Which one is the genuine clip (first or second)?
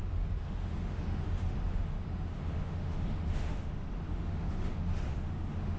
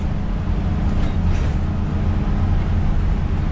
second